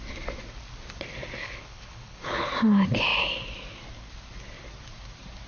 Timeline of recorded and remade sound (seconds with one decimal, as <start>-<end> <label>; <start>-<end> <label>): 0.0-1.4 recorded; 1.4-2.5 remade; 2.5-5.5 recorded